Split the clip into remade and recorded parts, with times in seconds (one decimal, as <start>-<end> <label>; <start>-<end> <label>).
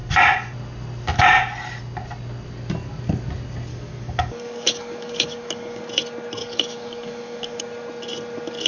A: 0.0-3.7 recorded; 3.7-5.8 remade; 5.8-6.4 recorded; 6.4-7.6 remade; 7.6-8.7 recorded